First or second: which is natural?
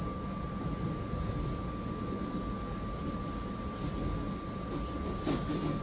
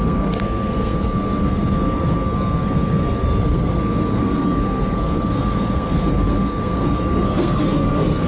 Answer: first